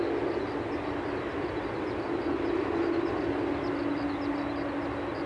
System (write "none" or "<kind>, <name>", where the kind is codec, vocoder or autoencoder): none